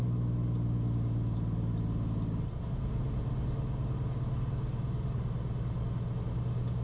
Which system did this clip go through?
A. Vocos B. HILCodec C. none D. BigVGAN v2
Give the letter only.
C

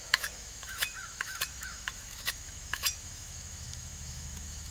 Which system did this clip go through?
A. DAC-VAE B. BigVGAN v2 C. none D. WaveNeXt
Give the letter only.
A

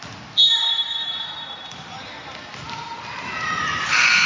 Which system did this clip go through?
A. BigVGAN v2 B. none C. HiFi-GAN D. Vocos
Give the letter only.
B